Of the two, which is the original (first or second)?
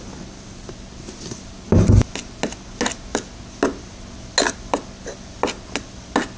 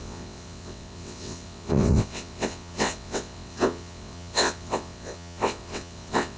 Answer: first